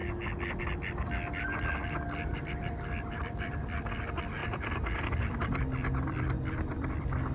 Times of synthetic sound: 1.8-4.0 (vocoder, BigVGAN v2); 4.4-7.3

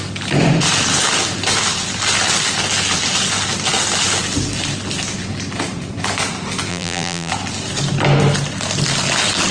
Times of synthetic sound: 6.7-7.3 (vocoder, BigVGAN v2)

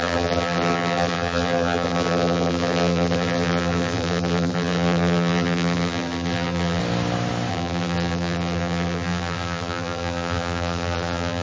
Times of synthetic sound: 0.0-6.8 (vocoder, BigVGAN v2); 7.5-11.4